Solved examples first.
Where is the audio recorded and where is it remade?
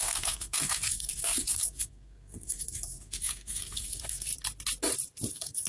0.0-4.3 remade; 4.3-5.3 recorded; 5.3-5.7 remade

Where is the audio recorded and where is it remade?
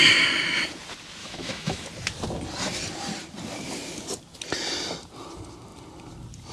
0.0-1.2 recorded; 1.2-1.8 remade; 1.8-6.5 recorded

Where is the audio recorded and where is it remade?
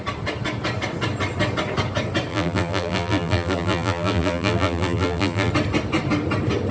0.0-2.3 recorded; 2.3-5.5 remade; 5.5-6.7 recorded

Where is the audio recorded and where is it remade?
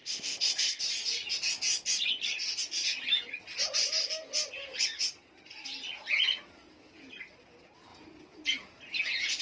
0.0-0.8 remade; 0.8-9.4 recorded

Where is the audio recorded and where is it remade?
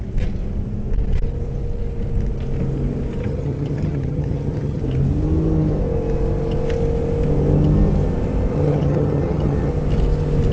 0.0-3.2 recorded; 3.2-4.8 remade; 4.8-8.5 recorded; 8.5-9.7 remade; 9.7-10.5 recorded